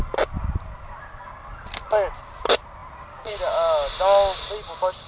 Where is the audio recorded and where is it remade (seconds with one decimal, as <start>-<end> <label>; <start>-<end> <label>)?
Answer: 0.0-5.1 recorded